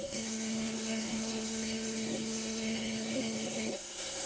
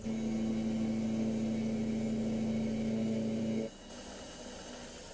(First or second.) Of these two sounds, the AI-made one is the first